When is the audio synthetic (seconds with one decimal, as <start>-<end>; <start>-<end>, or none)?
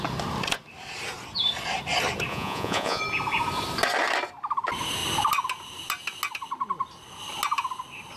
2.3-3.0